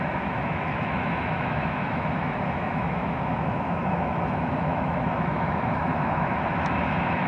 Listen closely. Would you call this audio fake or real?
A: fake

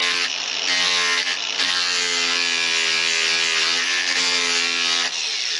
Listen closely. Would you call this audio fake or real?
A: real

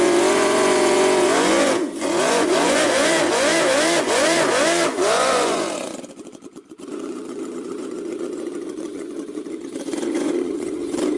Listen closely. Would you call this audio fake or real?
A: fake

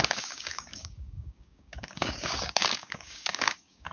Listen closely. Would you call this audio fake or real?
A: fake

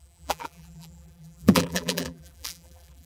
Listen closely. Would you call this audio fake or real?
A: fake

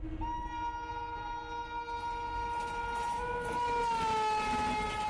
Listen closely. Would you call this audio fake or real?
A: real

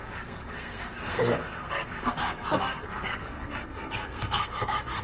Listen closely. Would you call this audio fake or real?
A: fake